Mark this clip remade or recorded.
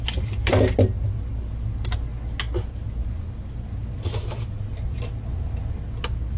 recorded